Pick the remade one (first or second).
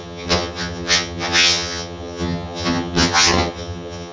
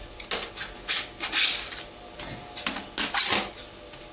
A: first